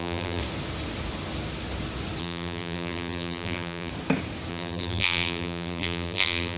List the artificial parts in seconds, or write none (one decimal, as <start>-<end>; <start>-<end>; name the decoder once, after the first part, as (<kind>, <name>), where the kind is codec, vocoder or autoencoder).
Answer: 0.0-0.4 (vocoder, BigVGAN v2); 2.2-3.9; 4.5-6.6